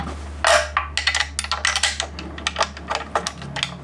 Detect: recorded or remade recorded